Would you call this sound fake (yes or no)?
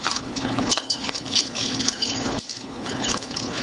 yes